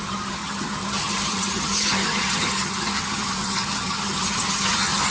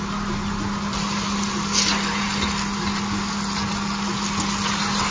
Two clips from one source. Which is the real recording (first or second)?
second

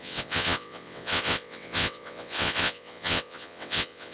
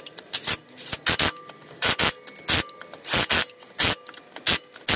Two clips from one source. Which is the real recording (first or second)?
second